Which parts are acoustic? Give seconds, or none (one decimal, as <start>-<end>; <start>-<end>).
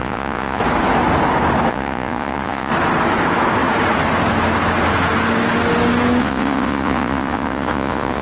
0.6-1.7; 2.7-6.2